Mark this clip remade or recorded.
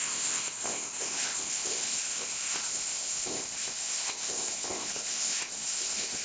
remade